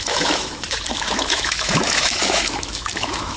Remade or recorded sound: remade